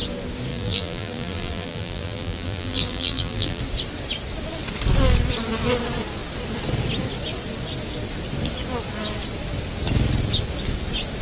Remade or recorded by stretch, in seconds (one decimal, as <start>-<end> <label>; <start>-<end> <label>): 0.0-0.5 recorded; 0.5-3.6 remade; 3.6-11.2 recorded